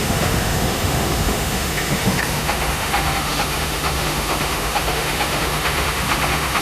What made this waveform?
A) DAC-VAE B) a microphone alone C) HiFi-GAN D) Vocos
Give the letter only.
A